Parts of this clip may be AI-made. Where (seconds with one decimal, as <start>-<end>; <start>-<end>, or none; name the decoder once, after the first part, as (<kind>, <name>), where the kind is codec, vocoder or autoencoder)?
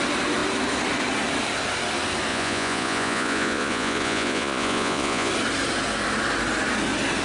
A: 2.3-5.3 (vocoder, Vocos)